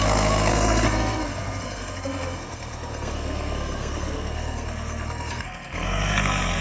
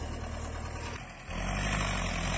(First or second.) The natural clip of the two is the second